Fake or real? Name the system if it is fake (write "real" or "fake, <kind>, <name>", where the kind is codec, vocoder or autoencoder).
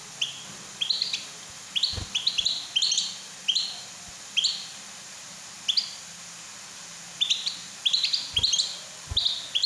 real